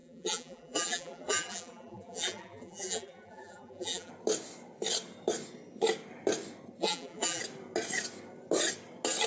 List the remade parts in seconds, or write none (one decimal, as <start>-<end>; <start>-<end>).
0.0-4.1; 6.8-7.4